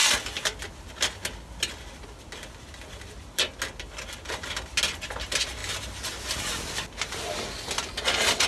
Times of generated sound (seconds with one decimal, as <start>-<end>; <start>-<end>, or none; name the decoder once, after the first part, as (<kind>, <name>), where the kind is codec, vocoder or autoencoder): none